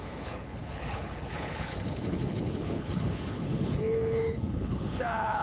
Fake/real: fake